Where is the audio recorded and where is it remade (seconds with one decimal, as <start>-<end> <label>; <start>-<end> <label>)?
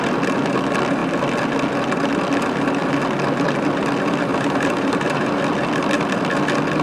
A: 0.0-4.3 recorded; 4.3-5.4 remade; 5.4-6.8 recorded